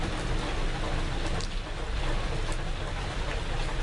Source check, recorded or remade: recorded